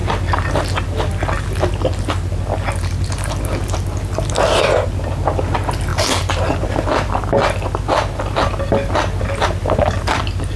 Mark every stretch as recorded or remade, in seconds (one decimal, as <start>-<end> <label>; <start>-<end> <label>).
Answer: 0.0-9.6 recorded; 9.6-10.2 remade; 10.2-10.6 recorded